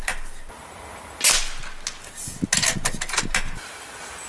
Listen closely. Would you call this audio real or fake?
real